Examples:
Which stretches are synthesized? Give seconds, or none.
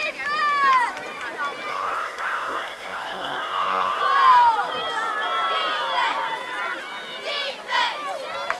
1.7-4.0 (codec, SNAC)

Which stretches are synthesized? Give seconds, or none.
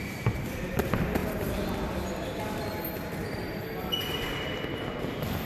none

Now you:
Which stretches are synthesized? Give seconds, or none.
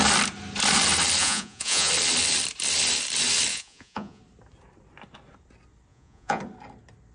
1.2-1.9 (vocoder, Vocos); 3.5-4.2; 5.9-6.4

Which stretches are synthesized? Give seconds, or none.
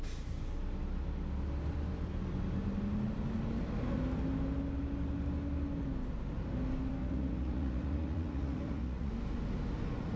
7.0-9.1 (vocoder, Vocos)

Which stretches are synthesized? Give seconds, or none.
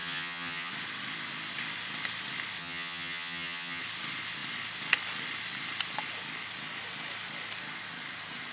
0.0-0.7 (vocoder, HiFi-GAN); 2.6-3.8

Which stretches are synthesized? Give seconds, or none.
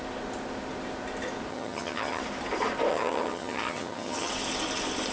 1.5-2.2 (vocoder, HiFi-GAN); 2.9-4.3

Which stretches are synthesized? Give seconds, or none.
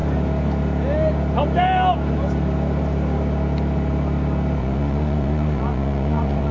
4.6-6.5 (vocoder, Vocos)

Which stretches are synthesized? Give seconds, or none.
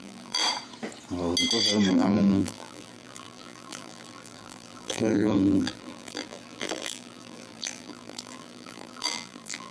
0.0-0.4 (vocoder, BigVGAN v2); 1.9-9.7